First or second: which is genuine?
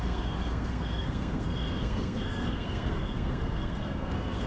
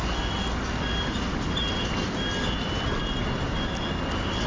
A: second